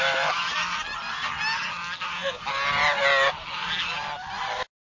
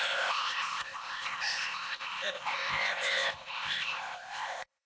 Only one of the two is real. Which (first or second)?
first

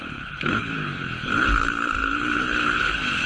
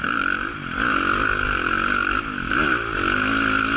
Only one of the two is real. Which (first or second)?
second